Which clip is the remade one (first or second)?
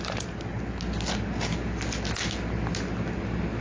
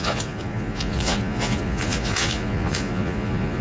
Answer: second